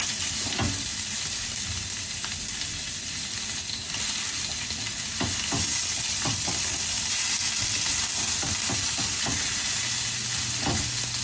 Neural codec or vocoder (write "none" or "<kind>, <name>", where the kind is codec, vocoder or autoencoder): none